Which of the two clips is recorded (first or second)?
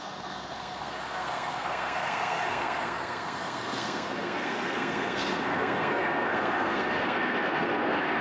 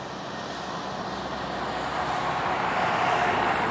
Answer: second